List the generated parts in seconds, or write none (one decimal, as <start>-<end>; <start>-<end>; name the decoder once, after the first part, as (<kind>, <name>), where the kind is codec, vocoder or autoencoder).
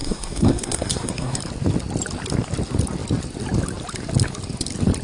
0.0-1.4 (codec, SNAC)